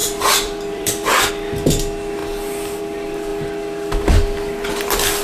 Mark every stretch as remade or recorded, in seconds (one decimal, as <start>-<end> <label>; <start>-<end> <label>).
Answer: 0.0-1.3 remade; 1.3-5.2 recorded